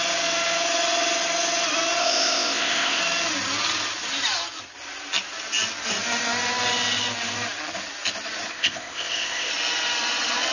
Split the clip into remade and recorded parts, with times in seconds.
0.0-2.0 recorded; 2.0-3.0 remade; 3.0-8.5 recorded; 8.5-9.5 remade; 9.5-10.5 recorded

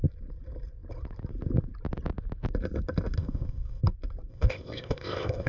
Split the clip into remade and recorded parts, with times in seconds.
0.0-3.2 recorded; 3.2-3.8 remade; 3.8-4.3 recorded; 4.3-5.5 remade

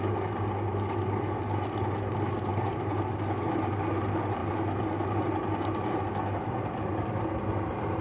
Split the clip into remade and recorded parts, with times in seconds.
0.0-8.0 recorded

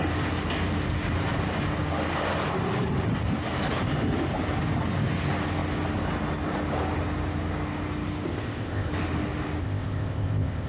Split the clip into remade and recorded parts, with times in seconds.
0.0-8.3 recorded; 8.3-8.9 remade; 8.9-9.6 recorded; 9.6-10.7 remade

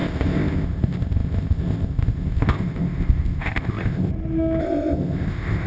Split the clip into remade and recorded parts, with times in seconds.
0.0-4.1 remade; 4.1-4.6 recorded; 4.6-5.7 remade

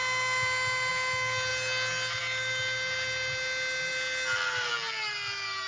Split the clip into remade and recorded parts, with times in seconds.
0.0-5.7 recorded

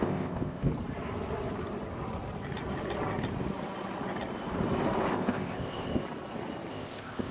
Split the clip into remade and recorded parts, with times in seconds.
0.0-0.7 remade; 0.7-5.1 recorded; 5.1-6.0 remade; 6.0-6.7 recorded; 6.7-7.3 remade

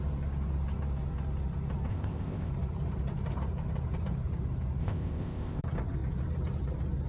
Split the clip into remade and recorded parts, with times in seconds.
0.0-1.9 recorded; 1.9-2.5 remade; 2.5-4.8 recorded; 4.8-5.6 remade; 5.6-7.1 recorded